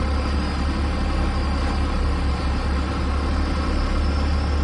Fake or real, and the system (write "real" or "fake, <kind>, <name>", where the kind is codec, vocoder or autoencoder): real